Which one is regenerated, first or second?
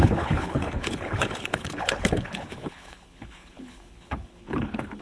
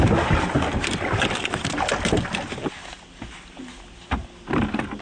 first